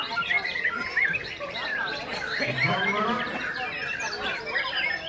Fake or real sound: real